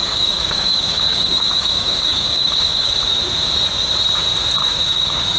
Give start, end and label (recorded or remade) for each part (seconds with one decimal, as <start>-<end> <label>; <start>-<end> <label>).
0.0-3.2 remade; 3.2-4.6 recorded; 4.6-5.4 remade